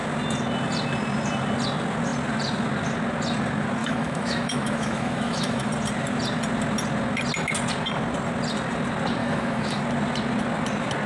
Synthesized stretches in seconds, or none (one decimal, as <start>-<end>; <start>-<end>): 3.8-5.7; 9.2-9.8